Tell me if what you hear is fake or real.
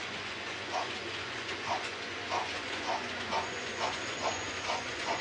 fake